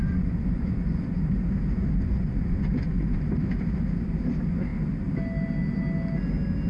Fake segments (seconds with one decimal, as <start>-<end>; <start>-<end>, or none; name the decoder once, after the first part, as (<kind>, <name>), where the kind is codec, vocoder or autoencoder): 0.0-1.2 (vocoder, Vocos); 1.8-3.3